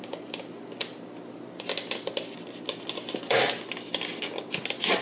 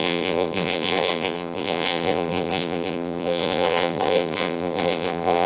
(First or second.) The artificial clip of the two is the second